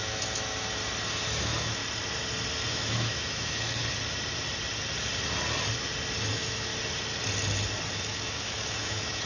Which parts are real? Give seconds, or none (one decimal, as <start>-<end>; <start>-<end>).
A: 0.8-1.4; 1.8-2.7; 3.8-6.3; 6.7-8.0